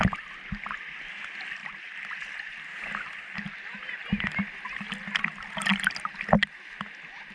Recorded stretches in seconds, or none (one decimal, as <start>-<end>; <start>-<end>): 0.0-7.3